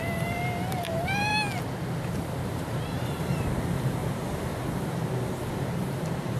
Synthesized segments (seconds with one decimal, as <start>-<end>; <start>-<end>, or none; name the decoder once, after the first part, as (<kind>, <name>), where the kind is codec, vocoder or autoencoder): 0.0-1.3 (vocoder, BigVGAN v2); 2.3-4.0; 5.5-6.4